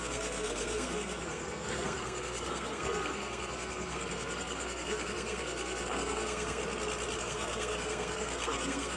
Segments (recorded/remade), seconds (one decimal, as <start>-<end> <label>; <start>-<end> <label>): 0.0-6.6 remade; 6.6-7.2 recorded; 7.2-9.0 remade